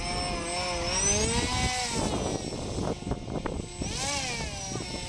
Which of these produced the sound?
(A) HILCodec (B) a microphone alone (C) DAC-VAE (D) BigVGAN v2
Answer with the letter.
B